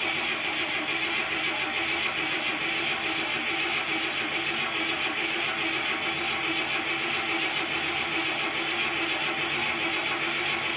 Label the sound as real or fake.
real